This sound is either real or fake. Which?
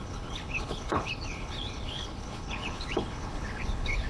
fake